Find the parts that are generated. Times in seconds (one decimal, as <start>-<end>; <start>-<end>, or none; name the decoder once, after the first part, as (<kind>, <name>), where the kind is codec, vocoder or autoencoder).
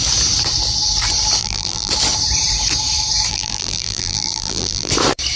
1.4-1.9 (vocoder, BigVGAN v2); 3.3-4.9